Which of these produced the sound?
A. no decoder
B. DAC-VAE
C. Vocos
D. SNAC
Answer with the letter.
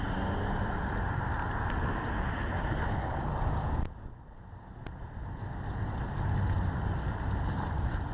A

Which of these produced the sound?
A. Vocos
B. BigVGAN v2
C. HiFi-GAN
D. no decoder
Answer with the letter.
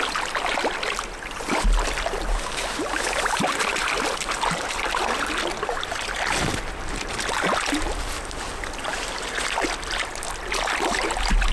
D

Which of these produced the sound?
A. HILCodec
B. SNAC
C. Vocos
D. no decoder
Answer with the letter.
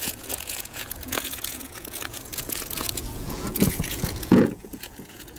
C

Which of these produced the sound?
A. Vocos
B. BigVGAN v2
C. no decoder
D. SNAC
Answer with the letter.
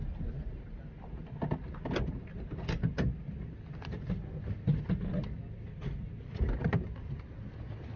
C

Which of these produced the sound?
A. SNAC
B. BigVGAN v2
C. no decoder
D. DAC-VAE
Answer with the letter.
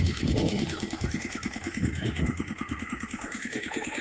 D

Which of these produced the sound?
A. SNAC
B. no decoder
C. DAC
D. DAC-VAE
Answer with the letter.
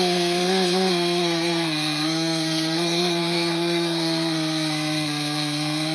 A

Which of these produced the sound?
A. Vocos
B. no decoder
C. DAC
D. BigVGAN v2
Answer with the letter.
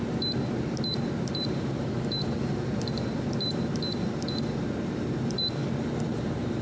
D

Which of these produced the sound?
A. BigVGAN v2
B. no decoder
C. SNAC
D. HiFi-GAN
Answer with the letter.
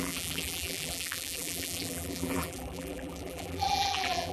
A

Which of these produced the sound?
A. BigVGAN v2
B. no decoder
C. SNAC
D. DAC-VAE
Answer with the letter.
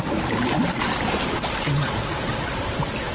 B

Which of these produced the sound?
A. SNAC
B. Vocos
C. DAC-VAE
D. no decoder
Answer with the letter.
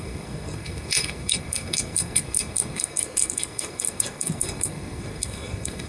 A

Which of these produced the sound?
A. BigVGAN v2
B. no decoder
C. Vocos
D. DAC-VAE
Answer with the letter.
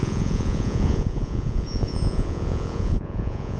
C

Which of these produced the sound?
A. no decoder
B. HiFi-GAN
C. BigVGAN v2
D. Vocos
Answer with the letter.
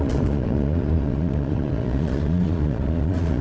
D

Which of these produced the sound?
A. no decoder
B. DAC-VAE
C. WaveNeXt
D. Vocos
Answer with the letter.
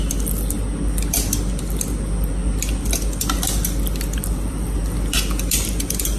A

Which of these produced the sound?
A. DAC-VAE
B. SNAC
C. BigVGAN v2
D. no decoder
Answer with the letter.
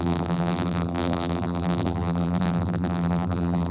C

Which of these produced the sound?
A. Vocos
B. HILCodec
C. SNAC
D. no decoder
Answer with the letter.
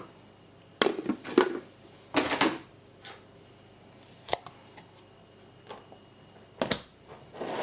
D